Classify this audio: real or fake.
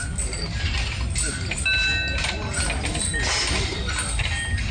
real